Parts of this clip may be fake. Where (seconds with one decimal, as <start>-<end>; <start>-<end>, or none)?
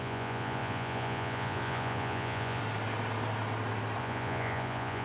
0.0-2.6; 4.0-5.0